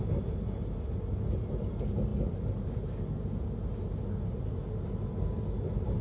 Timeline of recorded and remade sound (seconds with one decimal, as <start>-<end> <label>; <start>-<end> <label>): 0.0-6.0 recorded